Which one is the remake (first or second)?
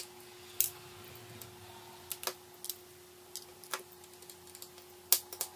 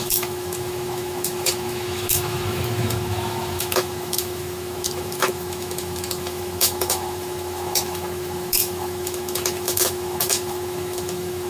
second